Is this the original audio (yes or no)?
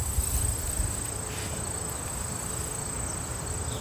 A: yes